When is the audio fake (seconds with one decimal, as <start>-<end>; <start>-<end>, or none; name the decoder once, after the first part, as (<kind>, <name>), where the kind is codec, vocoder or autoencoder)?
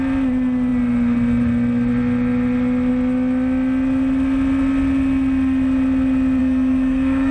6.4-7.3 (codec, SNAC)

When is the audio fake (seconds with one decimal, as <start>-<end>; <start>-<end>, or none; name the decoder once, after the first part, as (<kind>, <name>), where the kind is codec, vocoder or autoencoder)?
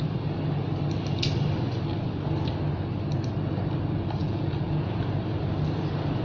4.2-4.9 (vocoder, Vocos)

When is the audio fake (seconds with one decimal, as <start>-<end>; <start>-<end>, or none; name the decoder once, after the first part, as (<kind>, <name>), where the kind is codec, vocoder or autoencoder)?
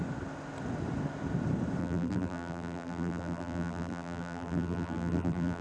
1.8-5.6 (vocoder, BigVGAN v2)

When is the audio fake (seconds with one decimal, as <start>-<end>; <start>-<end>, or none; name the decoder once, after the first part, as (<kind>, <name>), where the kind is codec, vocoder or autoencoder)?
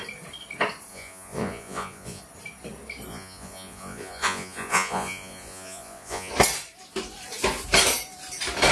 0.9-2.2 (vocoder, Vocos); 3.1-6.3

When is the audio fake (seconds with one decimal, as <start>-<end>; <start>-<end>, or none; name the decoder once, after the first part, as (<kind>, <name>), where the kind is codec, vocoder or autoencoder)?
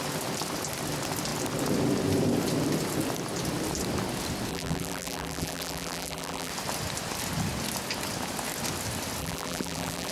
4.5-6.5 (vocoder, BigVGAN v2); 9.2-10.1